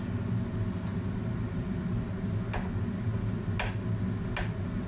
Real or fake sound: real